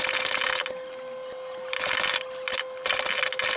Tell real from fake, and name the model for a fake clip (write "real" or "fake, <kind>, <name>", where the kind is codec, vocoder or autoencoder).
real